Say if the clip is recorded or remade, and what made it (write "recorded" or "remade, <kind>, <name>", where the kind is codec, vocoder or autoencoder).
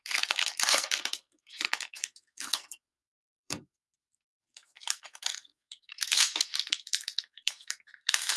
remade, codec, SNAC